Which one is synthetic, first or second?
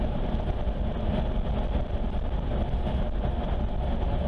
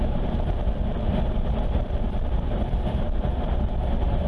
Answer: second